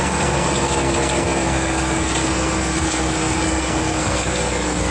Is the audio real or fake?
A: fake